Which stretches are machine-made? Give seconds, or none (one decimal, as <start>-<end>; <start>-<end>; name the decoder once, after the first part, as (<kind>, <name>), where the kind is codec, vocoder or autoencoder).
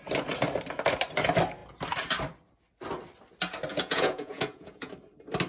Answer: 3.7-4.9 (vocoder, Vocos)